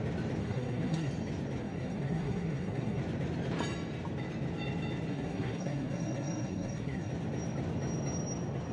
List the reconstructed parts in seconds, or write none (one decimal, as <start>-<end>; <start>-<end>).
0.4-1.1; 1.6-3.0; 5.1-7.1